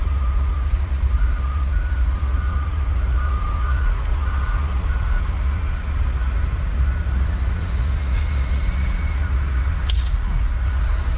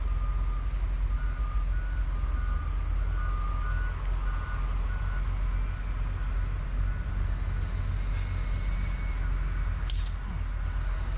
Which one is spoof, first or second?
first